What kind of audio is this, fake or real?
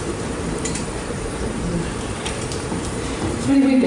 fake